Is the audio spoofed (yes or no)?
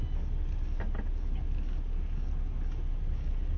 no